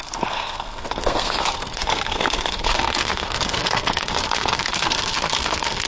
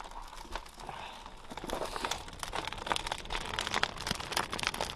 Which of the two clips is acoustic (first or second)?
second